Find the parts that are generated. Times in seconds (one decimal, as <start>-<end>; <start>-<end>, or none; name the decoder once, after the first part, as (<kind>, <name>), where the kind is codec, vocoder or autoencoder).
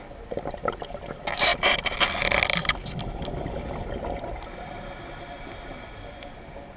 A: none